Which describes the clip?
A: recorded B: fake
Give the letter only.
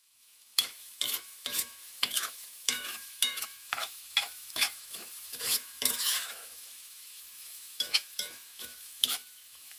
B